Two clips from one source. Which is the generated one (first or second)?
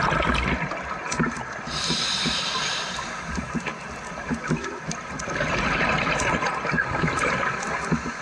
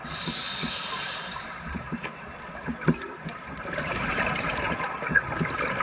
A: second